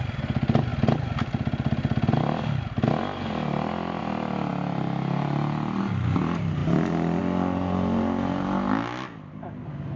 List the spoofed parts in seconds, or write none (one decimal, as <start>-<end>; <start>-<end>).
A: none